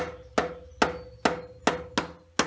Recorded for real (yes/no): yes